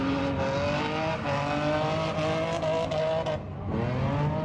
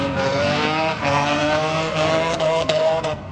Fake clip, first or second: second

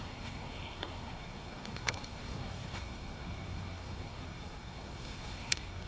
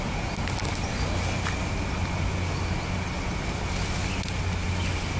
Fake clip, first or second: first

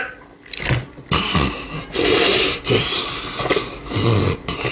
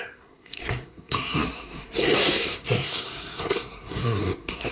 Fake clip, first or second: second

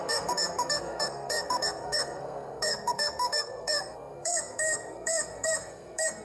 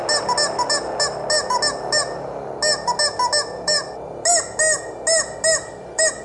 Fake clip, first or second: first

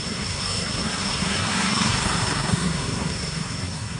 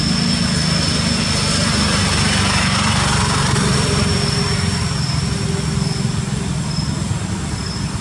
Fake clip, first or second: first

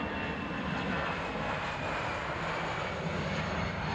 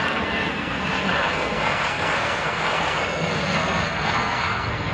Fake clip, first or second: second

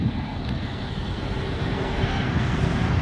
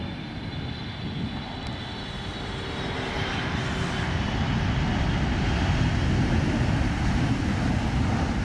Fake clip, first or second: first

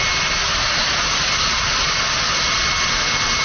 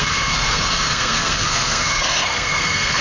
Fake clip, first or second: second